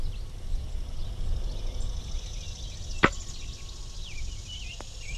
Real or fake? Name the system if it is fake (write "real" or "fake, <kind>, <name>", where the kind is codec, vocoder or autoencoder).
real